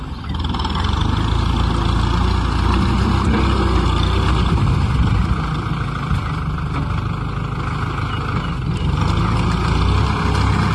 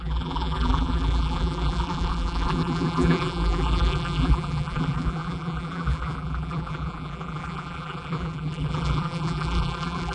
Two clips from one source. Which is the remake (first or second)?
second